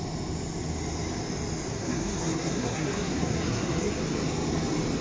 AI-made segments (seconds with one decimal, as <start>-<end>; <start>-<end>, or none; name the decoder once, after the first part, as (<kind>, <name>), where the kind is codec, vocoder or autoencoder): 1.7-3.9 (codec, SNAC)